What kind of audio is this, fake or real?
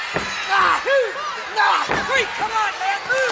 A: real